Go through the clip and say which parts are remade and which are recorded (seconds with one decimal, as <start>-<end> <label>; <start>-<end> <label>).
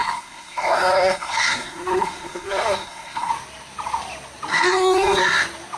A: 0.0-3.3 remade; 3.3-4.5 recorded; 4.5-5.3 remade; 5.3-5.8 recorded